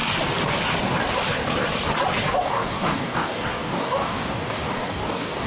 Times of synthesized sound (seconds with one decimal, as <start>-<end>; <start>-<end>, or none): 2.3-5.5